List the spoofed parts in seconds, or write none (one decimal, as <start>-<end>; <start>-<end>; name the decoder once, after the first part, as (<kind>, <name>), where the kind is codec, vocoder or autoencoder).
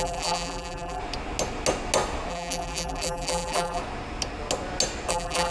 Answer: 0.0-1.0 (vocoder, BigVGAN v2); 2.3-3.8; 5.1-5.5